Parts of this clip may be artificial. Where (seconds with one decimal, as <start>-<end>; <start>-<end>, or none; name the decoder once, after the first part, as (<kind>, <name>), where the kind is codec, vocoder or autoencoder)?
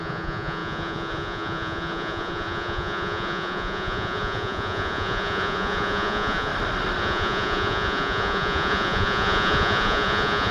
0.0-6.5 (vocoder, Vocos); 7.0-10.5